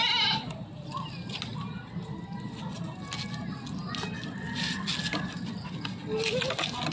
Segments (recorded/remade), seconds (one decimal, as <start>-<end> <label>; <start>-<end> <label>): 0.0-6.9 recorded